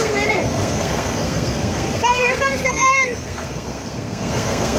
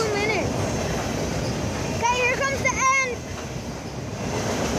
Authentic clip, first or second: second